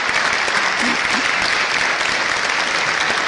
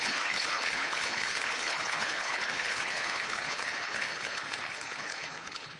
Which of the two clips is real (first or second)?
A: first